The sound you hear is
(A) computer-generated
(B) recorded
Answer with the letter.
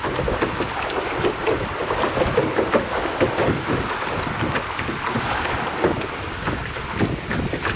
B